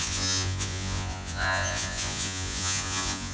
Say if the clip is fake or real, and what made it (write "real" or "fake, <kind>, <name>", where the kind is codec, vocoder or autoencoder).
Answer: fake, vocoder, Vocos